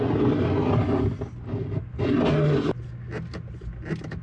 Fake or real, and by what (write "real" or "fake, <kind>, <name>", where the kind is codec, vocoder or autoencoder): real